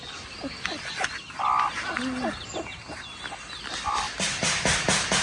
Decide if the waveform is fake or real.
real